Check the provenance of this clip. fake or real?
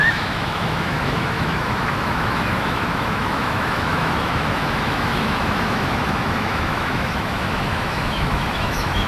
fake